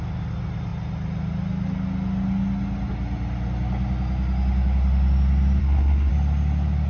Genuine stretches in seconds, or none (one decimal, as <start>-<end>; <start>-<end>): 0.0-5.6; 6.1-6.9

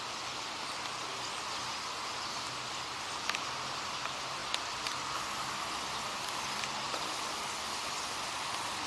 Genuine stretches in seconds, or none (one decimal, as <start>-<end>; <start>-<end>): 0.0-8.9

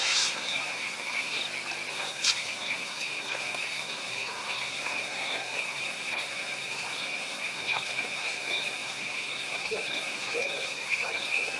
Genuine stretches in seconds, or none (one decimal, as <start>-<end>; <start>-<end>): 1.4-1.9

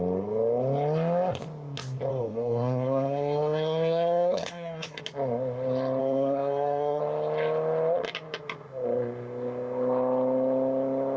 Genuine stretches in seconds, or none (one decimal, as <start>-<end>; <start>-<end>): 0.0-2.1; 5.0-6.0; 7.0-11.2

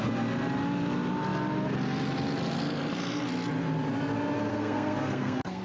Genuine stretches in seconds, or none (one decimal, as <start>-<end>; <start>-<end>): 0.0-4.5

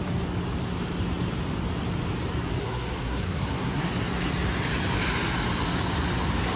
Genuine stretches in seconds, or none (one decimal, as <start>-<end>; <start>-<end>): 0.0-2.6; 3.9-6.6